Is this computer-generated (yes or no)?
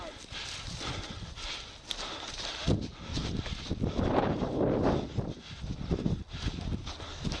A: no